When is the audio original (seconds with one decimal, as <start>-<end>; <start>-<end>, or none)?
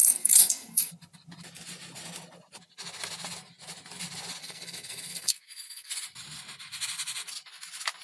0.9-4.4; 5.9-8.0